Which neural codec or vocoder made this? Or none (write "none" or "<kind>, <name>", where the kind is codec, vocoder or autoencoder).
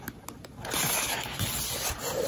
none